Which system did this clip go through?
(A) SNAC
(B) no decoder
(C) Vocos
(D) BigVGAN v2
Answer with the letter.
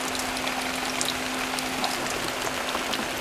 B